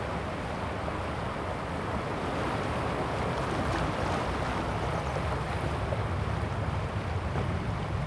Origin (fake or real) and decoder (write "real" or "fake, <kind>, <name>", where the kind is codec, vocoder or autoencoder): real